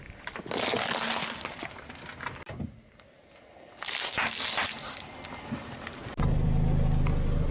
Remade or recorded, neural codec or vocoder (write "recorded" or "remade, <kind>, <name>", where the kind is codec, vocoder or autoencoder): recorded